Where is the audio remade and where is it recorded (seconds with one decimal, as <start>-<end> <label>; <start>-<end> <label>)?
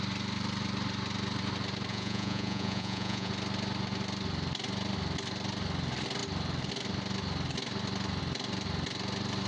0.0-1.9 recorded; 1.9-3.3 remade; 3.3-9.5 recorded